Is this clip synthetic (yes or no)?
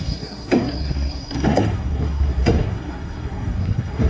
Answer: yes